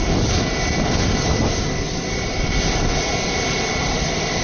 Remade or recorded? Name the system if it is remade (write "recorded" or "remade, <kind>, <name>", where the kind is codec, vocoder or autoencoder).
recorded